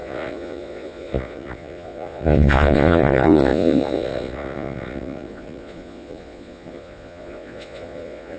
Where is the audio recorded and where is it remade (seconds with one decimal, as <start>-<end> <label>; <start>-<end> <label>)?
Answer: 0.0-8.4 remade